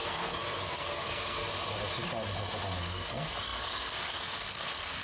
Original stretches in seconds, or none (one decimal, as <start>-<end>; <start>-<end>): 1.4-2.8